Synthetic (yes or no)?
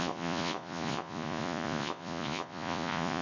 yes